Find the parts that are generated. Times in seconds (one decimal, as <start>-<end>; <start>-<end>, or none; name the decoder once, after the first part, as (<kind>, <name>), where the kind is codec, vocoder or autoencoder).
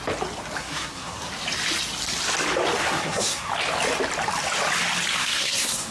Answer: 0.6-1.3 (codec, SNAC); 2.8-3.5; 5.2-5.9